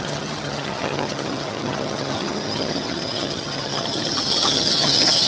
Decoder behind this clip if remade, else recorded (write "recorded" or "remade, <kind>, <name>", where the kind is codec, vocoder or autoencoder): remade, vocoder, HiFi-GAN